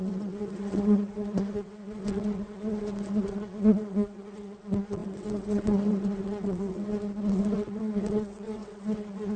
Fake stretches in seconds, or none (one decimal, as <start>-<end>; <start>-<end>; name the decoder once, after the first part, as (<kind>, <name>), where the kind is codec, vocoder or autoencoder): 0.0-9.4 (vocoder, WaveNeXt)